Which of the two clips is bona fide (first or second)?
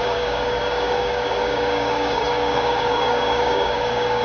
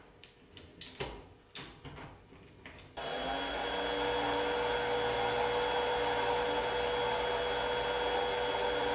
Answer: second